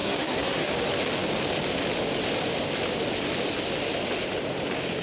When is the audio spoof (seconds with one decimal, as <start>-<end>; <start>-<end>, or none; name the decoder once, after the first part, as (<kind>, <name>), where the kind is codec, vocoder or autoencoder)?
0.0-0.7 (codec, SNAC)